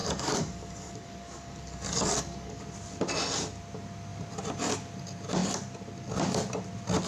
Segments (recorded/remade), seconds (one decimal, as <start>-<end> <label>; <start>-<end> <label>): 0.0-2.6 remade; 2.6-7.1 recorded